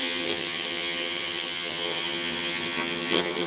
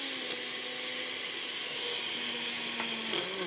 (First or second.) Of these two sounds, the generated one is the first